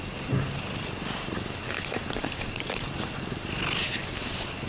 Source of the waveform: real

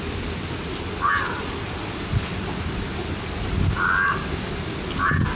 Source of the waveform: real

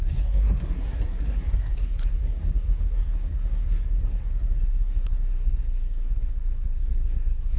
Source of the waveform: fake